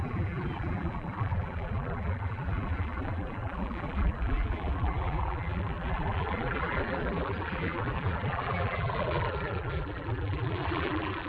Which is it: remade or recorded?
remade